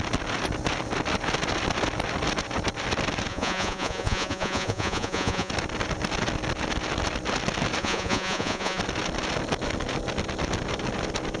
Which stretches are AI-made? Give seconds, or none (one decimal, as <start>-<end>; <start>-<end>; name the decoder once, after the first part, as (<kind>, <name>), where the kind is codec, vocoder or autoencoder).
3.3-5.5 (vocoder, Vocos); 7.8-8.8